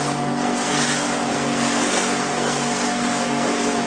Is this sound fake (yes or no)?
yes